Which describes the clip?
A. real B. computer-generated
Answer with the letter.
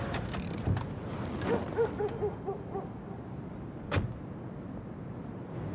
A